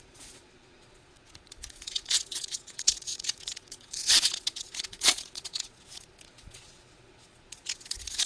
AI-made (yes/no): yes